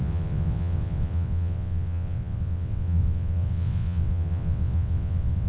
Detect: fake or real fake